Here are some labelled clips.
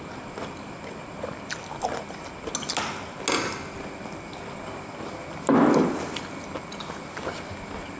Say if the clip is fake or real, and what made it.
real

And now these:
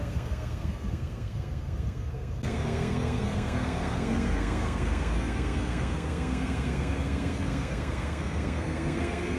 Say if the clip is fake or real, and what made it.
fake, codec, SNAC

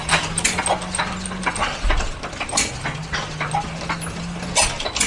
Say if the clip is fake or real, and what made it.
real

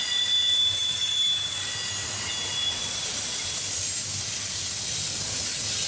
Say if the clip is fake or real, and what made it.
real